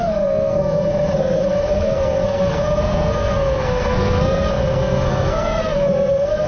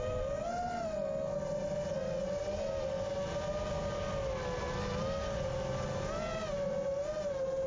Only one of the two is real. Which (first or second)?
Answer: second